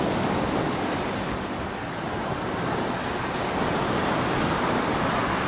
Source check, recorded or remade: recorded